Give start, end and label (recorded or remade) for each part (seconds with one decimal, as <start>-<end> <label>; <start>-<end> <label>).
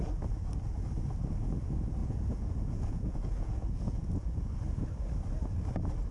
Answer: 0.0-2.0 recorded; 2.0-4.5 remade; 4.5-6.1 recorded